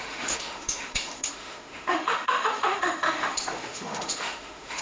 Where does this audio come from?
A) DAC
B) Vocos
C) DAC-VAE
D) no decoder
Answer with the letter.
C